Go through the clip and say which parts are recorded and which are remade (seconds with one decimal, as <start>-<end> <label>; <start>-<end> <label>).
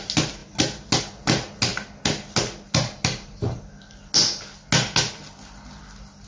0.0-6.3 recorded